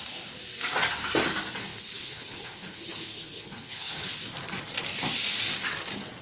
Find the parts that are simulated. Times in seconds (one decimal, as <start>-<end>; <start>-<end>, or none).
1.6-4.2